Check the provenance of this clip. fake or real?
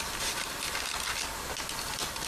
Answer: real